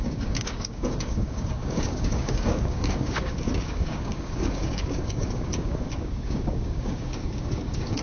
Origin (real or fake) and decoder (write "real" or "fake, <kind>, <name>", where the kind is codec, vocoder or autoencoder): fake, codec, DAC